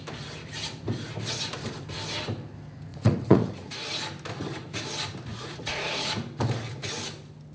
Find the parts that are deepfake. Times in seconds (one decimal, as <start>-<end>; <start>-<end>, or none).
2.9-3.7; 5.3-6.1

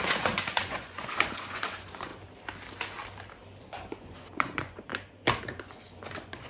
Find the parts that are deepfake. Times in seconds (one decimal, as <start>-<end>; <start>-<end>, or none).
0.0-2.1; 3.6-4.9; 5.4-6.5

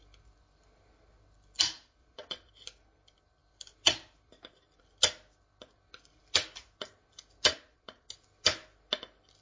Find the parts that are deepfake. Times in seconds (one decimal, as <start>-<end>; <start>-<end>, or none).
2.0-2.5; 7.5-8.1

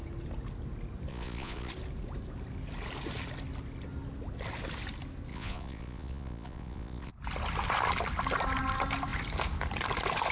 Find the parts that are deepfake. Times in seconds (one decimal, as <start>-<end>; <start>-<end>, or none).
1.1-1.7; 5.3-7.1

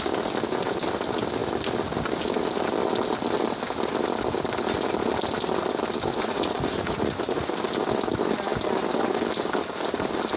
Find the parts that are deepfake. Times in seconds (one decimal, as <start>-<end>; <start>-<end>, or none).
6.1-7.5